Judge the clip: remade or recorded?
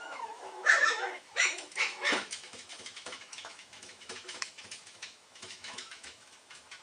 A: remade